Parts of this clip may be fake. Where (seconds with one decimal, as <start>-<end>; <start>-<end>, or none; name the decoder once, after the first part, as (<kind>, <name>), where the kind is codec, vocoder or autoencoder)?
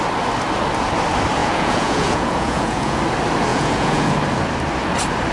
1.4-3.0 (vocoder, Vocos); 3.5-4.1